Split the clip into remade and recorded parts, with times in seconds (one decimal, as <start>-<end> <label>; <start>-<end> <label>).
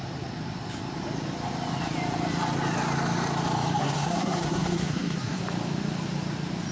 0.0-3.8 recorded; 3.8-5.4 remade; 5.4-6.7 recorded